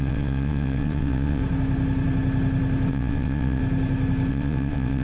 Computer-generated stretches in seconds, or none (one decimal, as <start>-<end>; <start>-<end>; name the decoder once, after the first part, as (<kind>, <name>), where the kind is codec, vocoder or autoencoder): 0.0-1.4 (vocoder, WaveNeXt); 2.9-3.6; 4.3-5.0